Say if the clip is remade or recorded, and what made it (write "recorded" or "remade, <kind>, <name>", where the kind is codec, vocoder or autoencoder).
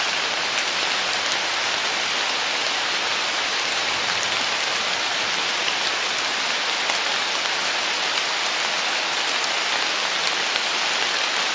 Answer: recorded